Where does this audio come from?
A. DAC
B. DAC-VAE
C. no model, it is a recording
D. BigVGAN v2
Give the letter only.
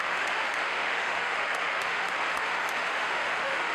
B